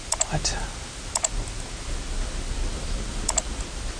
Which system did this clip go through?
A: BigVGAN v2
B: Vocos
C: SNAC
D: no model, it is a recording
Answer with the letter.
D